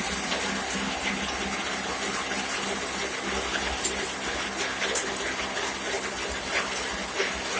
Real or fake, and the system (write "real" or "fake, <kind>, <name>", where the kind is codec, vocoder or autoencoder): real